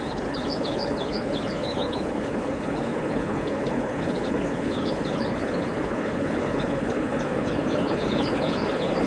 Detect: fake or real fake